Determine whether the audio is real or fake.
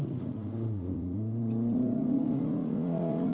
fake